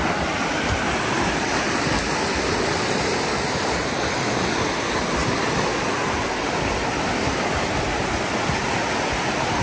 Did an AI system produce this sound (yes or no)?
no